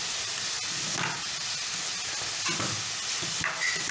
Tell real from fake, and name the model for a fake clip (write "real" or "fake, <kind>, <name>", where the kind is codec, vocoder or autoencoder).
real